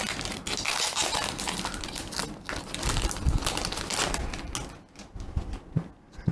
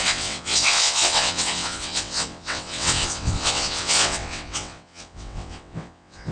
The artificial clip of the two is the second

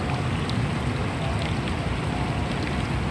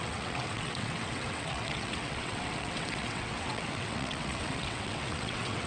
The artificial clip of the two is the second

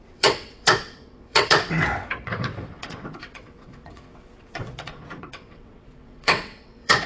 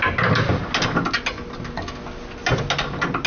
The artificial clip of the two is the first